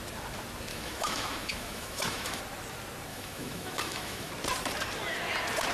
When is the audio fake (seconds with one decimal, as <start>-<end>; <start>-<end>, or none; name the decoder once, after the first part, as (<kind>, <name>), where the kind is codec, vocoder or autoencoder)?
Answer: 0.7-2.4 (autoencoder, DAC-VAE); 3.1-4.3